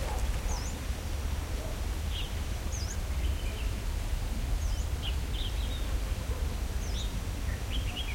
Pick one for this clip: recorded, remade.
recorded